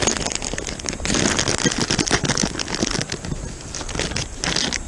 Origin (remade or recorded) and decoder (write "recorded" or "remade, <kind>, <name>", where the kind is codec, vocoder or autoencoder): recorded